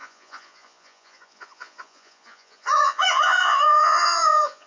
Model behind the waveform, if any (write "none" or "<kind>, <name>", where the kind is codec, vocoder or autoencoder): vocoder, Vocos